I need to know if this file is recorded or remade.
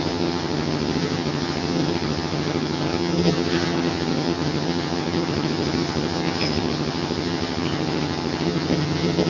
remade